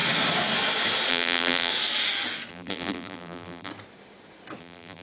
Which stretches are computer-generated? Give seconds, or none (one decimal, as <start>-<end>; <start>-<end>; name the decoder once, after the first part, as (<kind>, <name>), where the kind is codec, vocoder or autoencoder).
1.1-1.7 (vocoder, BigVGAN v2); 2.5-3.7; 4.6-5.0